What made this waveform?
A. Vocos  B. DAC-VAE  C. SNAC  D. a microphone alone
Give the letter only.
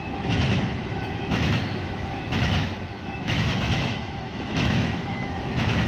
B